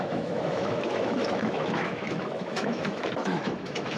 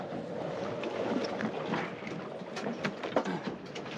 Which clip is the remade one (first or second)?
first